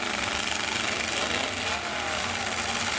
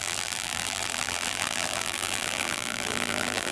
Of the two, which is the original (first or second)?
first